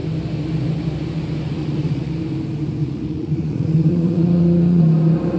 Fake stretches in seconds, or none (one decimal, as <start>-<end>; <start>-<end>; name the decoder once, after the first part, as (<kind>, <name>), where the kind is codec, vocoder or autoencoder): 1.6-2.1 (vocoder, Vocos); 2.8-4.8